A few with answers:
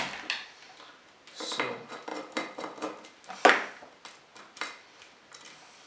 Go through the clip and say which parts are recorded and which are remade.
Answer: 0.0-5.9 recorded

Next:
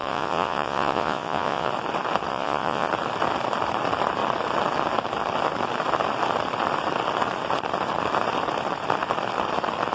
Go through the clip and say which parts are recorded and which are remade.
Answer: 0.0-1.7 remade; 1.7-2.3 recorded; 2.3-2.9 remade; 2.9-9.9 recorded

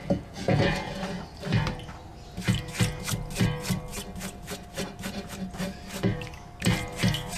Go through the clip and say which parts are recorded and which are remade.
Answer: 0.0-1.0 remade; 1.0-7.4 recorded

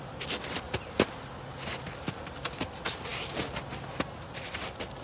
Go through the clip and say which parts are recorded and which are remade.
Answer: 0.0-5.0 recorded

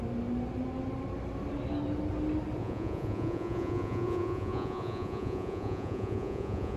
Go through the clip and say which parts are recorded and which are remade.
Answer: 0.0-2.6 recorded; 2.6-6.8 remade